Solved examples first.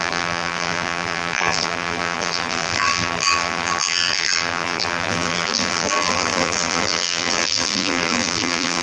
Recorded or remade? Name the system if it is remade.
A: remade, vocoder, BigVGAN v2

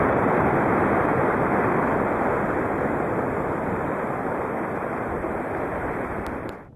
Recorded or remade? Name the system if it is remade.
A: recorded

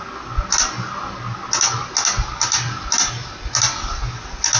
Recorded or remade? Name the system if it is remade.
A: recorded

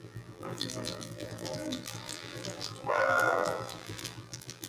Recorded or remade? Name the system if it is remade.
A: remade, vocoder, BigVGAN v2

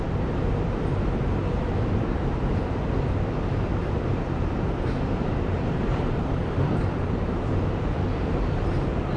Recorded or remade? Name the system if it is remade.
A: remade, vocoder, BigVGAN v2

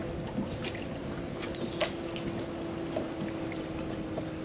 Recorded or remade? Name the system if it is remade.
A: recorded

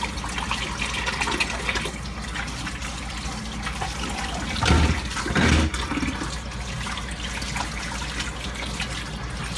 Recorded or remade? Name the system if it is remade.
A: recorded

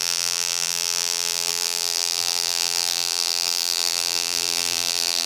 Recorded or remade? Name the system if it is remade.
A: remade, vocoder, BigVGAN v2